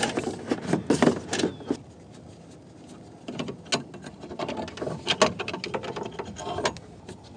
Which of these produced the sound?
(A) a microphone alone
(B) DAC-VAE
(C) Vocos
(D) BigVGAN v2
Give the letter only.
A